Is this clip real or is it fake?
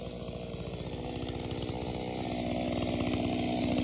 real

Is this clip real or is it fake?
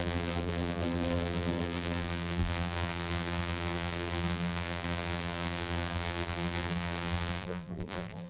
fake